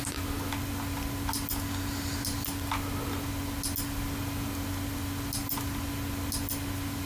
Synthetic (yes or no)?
no